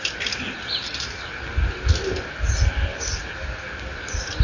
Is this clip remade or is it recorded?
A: recorded